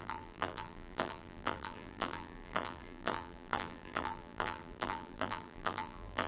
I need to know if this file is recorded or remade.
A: remade